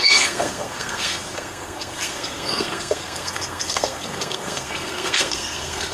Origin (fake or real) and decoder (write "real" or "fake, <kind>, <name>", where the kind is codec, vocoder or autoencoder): fake, codec, SNAC